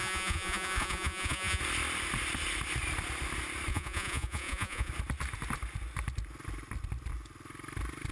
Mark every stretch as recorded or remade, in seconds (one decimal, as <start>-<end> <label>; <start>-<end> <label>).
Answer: 0.0-1.6 remade; 1.6-3.7 recorded; 3.7-4.9 remade; 4.9-8.1 recorded